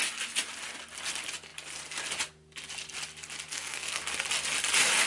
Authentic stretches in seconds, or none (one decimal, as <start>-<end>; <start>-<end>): 0.0-3.5; 4.0-5.1